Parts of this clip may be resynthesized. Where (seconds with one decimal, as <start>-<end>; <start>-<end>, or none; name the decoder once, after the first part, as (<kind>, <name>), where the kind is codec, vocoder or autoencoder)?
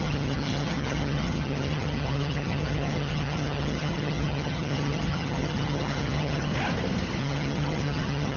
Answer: 0.0-6.5 (vocoder, HiFi-GAN); 7.2-8.4